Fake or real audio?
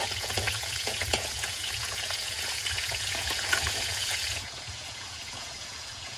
fake